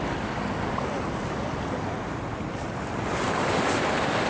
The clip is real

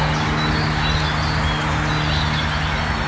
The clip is real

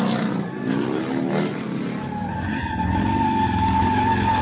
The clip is real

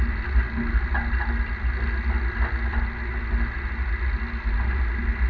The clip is real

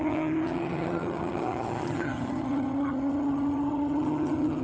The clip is fake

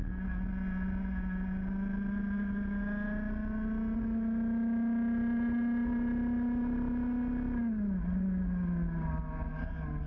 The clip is real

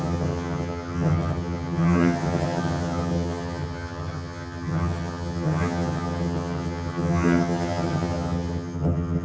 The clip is fake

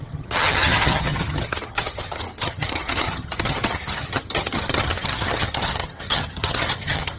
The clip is fake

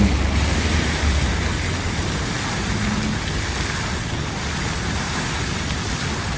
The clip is real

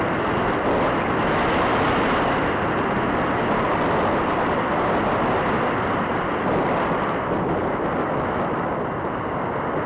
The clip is real